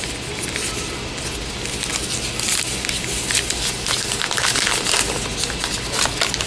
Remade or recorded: recorded